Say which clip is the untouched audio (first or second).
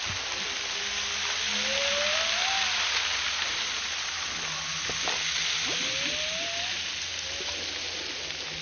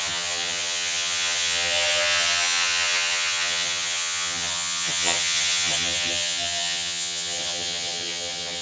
first